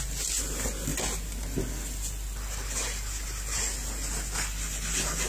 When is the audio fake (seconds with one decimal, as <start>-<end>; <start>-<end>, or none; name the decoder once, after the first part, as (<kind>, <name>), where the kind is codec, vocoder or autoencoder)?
none